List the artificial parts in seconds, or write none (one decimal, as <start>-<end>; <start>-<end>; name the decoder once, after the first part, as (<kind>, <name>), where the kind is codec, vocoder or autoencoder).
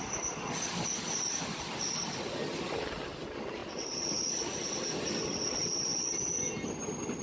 none